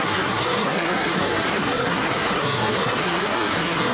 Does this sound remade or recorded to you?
remade